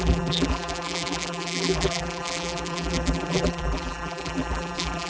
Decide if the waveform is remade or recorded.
remade